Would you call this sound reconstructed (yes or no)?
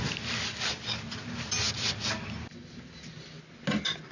no